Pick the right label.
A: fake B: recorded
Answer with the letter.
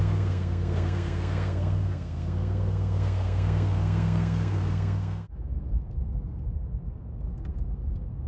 A